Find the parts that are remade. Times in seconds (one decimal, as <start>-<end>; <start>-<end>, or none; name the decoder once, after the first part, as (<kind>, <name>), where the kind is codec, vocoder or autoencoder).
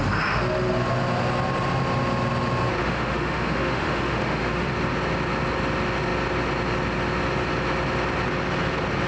2.8-4.7 (autoencoder, DAC-VAE)